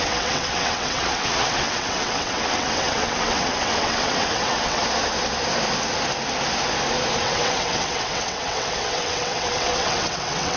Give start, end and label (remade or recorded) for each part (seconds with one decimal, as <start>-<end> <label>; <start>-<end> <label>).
0.0-4.8 remade; 4.8-7.2 recorded; 7.2-10.6 remade